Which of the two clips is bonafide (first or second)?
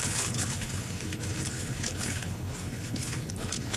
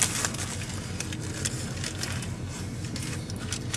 second